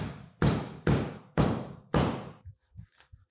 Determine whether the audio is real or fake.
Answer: fake